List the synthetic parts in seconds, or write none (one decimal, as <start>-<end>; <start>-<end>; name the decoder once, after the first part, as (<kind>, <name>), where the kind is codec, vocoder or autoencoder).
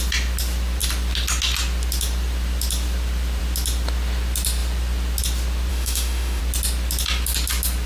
5.7-6.4 (autoencoder, DAC-VAE)